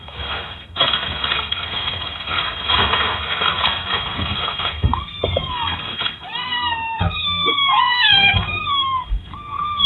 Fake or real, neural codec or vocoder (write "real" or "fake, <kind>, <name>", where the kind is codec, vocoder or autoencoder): fake, codec, SNAC